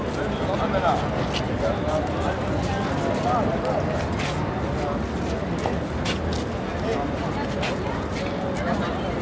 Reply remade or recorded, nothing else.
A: recorded